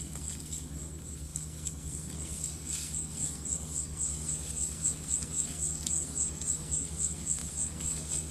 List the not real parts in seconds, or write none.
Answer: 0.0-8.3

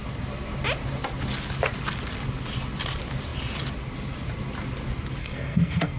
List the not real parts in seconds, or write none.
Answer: 5.2-6.0

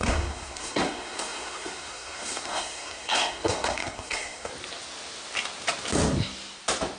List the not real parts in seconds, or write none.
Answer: 0.0-4.5

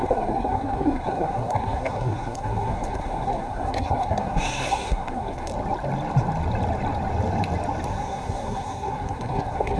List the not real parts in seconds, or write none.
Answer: 0.0-5.5; 7.9-9.8

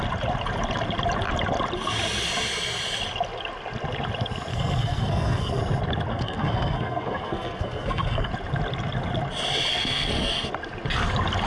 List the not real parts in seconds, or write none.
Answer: 4.5-5.6; 6.1-8.3; 9.7-10.5

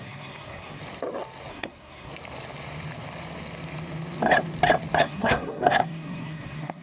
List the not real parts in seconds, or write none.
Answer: 0.0-0.8; 1.5-2.1; 5.0-6.8

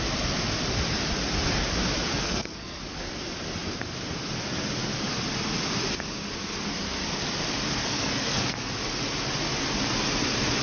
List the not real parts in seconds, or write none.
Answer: 2.1-2.8; 7.8-8.7

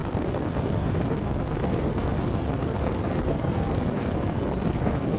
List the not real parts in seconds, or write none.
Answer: 0.0-5.2